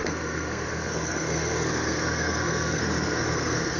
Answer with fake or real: fake